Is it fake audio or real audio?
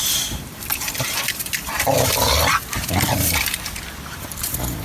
real